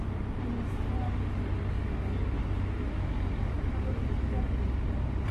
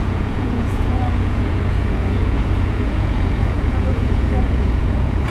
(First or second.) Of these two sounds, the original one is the first